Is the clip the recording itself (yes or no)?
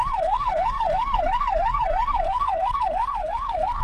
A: no